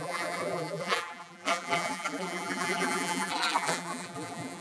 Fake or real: fake